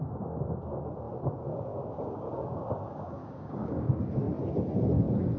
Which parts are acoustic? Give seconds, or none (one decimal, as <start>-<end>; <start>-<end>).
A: 0.0-1.5; 4.1-5.4